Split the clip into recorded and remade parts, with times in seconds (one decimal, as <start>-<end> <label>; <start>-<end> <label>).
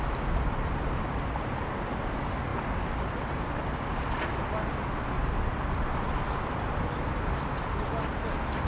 0.0-8.7 recorded